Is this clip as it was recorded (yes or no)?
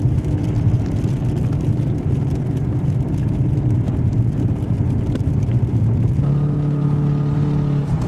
yes